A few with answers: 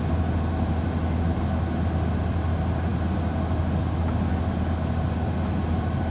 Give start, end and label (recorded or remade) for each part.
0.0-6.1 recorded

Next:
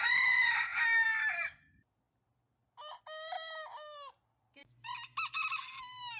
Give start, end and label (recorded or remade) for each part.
0.0-6.2 recorded

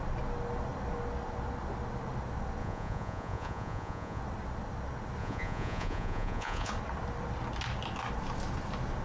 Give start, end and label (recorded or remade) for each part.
0.0-2.6 recorded; 2.6-4.2 remade; 4.2-5.2 recorded; 5.2-6.7 remade; 6.7-9.0 recorded

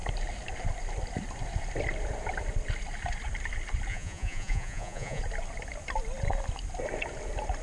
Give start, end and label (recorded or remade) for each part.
0.0-3.9 recorded; 3.9-5.2 remade; 5.2-7.6 recorded

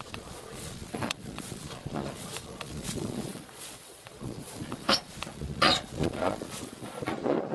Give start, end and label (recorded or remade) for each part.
0.0-7.5 remade